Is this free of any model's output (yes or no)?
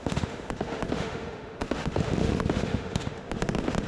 no